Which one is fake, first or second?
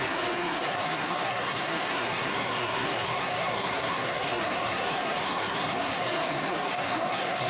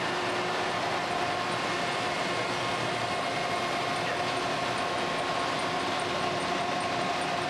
first